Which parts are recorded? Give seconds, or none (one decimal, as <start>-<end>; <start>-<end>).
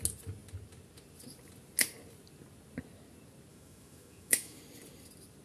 0.0-3.5; 4.6-5.4